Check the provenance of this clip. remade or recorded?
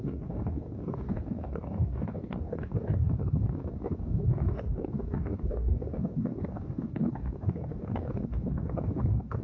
remade